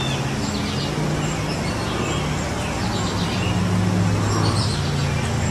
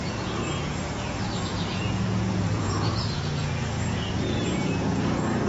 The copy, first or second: second